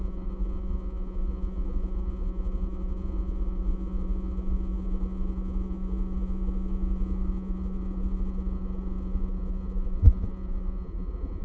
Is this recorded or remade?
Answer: remade